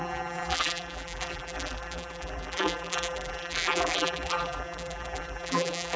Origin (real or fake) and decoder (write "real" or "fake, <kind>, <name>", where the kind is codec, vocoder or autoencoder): fake, vocoder, BigVGAN v2